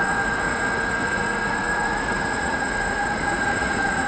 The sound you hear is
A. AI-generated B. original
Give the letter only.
A